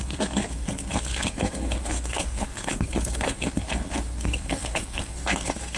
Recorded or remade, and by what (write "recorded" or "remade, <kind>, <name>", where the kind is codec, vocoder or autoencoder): remade, codec, SNAC